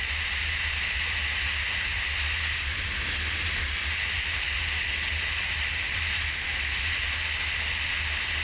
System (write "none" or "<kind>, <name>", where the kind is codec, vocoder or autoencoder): none